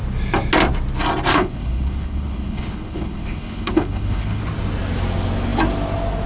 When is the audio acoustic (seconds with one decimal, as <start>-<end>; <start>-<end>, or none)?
0.0-1.3; 4.4-6.3